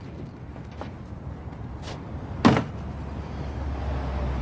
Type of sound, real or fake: real